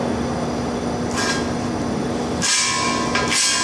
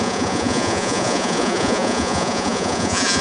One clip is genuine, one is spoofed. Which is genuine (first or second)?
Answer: first